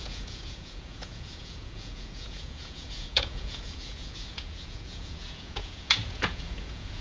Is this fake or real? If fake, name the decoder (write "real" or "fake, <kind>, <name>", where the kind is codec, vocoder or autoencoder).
fake, vocoder, Vocos